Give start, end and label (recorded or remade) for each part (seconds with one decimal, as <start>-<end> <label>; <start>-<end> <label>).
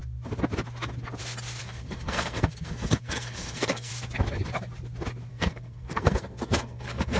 0.0-1.6 recorded; 1.6-3.9 remade; 3.9-5.3 recorded; 5.3-7.2 remade